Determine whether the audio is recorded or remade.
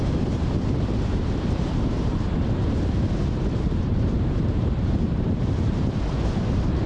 remade